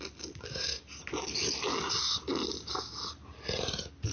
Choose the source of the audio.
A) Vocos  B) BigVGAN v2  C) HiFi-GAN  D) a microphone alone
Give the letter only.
D